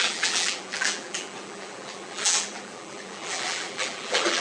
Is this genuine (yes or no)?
no